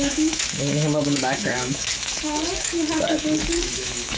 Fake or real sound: fake